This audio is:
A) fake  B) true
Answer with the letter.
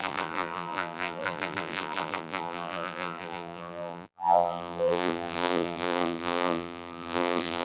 A